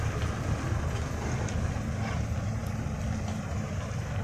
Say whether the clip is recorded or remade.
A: recorded